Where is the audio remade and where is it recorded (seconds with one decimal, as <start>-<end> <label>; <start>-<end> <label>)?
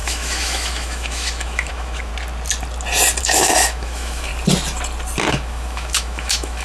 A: 0.0-2.1 remade; 2.1-3.2 recorded; 3.2-4.3 remade; 4.3-5.3 recorded; 5.3-6.6 remade